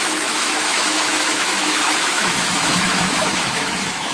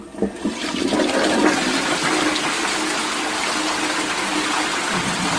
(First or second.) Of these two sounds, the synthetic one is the first